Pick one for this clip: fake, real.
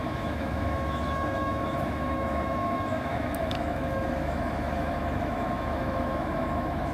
fake